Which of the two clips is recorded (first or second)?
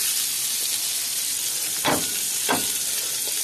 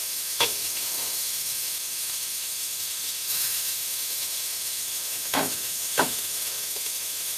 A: first